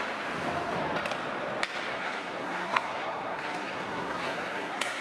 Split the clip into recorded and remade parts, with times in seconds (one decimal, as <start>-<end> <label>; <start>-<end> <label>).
0.0-1.9 recorded; 1.9-5.0 remade